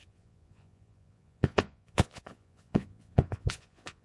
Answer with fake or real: fake